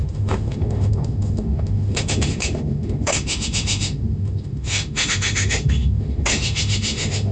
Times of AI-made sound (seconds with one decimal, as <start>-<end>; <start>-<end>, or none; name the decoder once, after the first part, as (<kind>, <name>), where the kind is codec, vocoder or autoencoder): 0.0-7.3 (autoencoder, DAC-VAE)